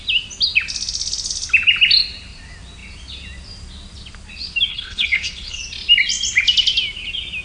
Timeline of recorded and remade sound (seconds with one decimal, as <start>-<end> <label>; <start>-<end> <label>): 0.0-4.7 recorded; 4.7-5.6 remade; 5.6-7.4 recorded